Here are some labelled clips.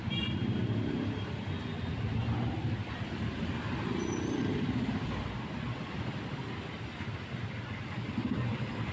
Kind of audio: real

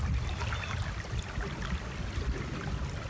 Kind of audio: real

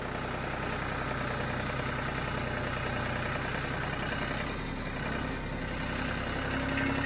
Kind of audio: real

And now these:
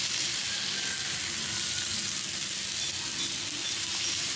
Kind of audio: real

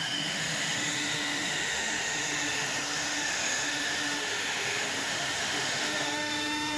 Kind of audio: fake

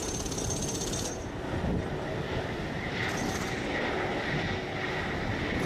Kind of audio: real